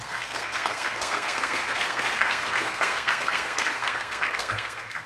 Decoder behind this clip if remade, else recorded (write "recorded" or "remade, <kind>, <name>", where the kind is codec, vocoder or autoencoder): remade, codec, SNAC